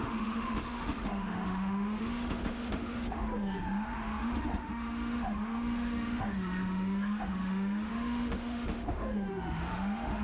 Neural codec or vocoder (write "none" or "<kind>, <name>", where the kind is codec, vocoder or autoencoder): autoencoder, DAC-VAE